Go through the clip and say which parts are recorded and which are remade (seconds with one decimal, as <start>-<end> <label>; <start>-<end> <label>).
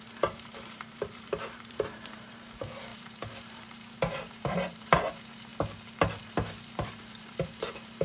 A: 0.0-5.5 remade; 5.5-6.2 recorded; 6.2-8.0 remade